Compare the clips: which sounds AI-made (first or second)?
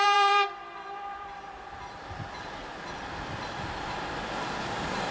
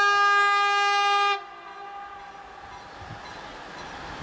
first